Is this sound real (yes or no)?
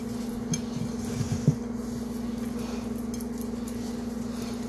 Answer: yes